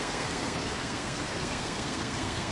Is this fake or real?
fake